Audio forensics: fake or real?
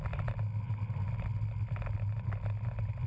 real